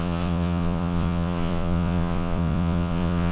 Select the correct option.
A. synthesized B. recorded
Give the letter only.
A